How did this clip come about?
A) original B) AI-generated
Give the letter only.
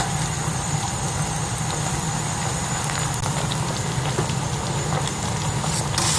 A